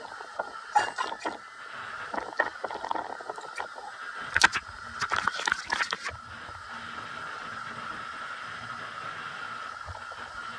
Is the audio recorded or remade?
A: recorded